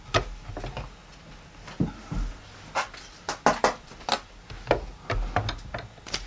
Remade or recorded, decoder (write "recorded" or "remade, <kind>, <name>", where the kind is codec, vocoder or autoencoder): recorded